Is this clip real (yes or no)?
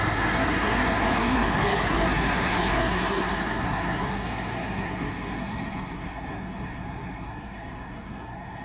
no